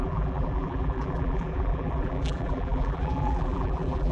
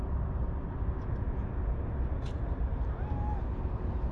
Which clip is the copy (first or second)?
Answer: first